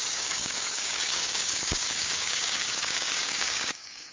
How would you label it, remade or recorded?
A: remade